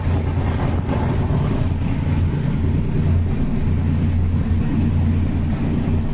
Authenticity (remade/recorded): recorded